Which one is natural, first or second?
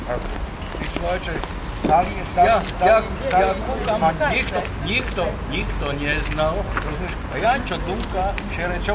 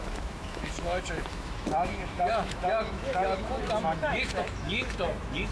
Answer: first